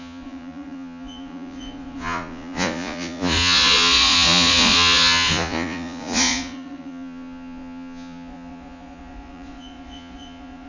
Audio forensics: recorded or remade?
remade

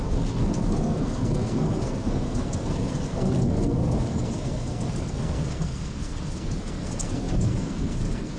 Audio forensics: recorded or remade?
remade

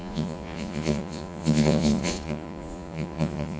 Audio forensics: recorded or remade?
remade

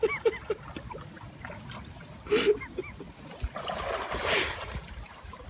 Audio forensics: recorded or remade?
recorded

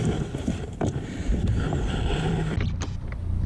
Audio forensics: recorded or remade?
remade